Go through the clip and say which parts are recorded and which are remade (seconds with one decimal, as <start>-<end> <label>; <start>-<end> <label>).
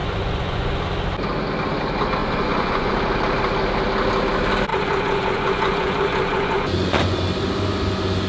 0.0-0.8 remade; 0.8-2.2 recorded; 2.2-2.9 remade; 2.9-4.7 recorded; 4.7-7.2 remade; 7.2-8.3 recorded